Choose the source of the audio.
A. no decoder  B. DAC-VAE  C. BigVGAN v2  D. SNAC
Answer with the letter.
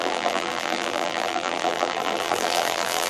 C